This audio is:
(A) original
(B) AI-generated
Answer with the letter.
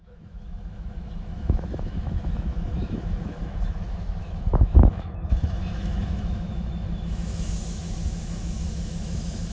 B